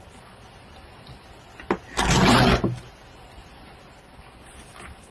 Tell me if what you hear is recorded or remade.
recorded